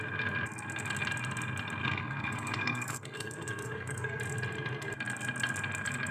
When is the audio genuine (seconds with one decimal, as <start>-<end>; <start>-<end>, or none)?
0.0-1.8; 4.2-6.1